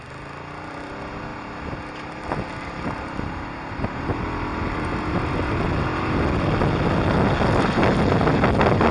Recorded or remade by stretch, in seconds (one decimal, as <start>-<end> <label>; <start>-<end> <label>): 0.0-8.9 recorded